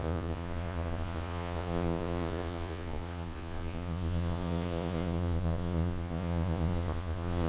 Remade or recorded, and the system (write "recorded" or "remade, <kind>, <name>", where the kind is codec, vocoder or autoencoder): remade, vocoder, Vocos